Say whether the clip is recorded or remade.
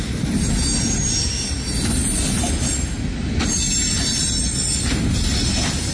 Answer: recorded